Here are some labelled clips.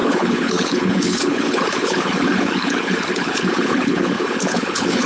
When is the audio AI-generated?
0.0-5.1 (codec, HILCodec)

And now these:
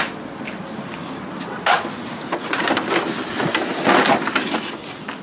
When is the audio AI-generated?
none

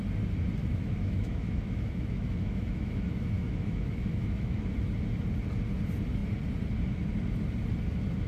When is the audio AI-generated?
0.6-4.6 (autoencoder, DAC-VAE)